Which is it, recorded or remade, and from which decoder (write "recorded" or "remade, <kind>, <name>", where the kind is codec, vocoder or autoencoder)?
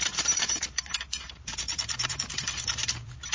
remade, vocoder, BigVGAN v2